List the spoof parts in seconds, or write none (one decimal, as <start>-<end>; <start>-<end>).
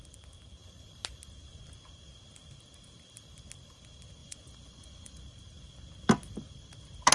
4.2-5.2